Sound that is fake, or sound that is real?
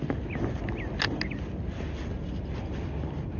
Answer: real